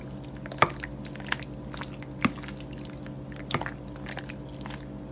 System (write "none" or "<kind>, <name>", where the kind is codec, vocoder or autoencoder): none